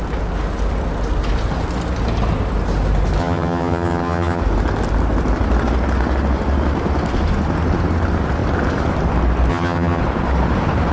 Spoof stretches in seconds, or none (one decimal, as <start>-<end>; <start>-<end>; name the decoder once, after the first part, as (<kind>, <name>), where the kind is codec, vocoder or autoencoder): 3.2-4.4 (vocoder, HiFi-GAN); 9.5-10.0